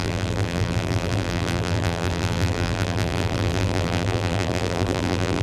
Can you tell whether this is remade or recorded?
remade